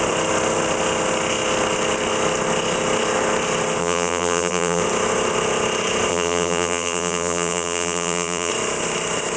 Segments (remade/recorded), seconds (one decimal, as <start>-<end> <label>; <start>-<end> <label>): 0.0-3.8 recorded; 3.8-4.8 remade; 4.8-6.1 recorded; 6.1-8.5 remade; 8.5-9.4 recorded